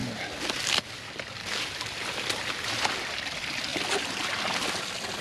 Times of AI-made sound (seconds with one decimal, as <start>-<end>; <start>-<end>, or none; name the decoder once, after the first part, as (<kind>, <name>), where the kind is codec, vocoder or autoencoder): none